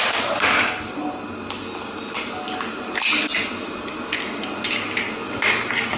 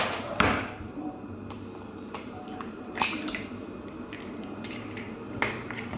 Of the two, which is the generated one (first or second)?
second